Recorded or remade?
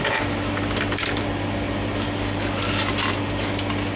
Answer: recorded